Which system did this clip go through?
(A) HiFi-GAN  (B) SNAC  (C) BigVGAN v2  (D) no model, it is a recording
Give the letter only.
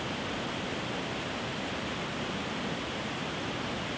D